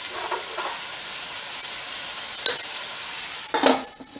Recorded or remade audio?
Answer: recorded